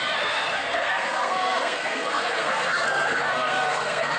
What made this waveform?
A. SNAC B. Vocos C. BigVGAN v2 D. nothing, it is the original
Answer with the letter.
A